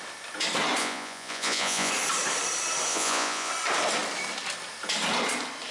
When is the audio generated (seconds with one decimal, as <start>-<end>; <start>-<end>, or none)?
0.8-1.9; 2.9-3.5